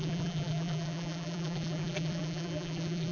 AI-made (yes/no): yes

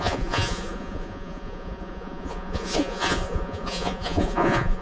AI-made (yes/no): yes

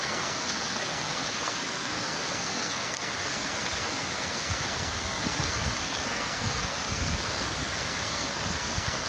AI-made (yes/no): yes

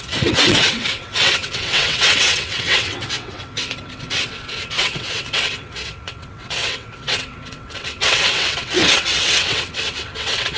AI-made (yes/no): yes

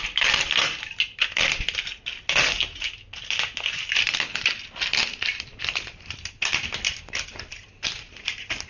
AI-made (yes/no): no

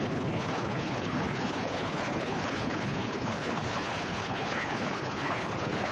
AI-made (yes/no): yes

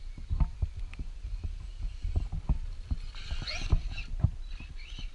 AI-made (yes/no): no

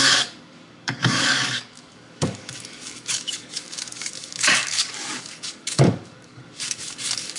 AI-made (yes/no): yes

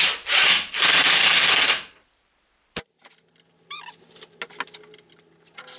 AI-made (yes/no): no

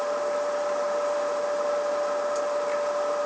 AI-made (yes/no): no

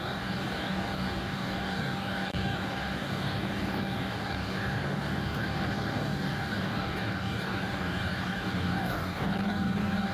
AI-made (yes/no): yes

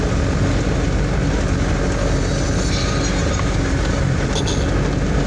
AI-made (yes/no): no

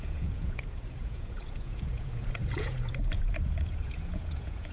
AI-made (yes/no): yes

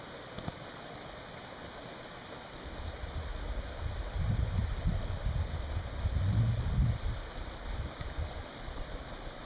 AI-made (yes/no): no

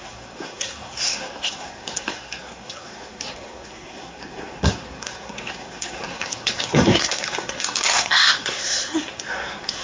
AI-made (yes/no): yes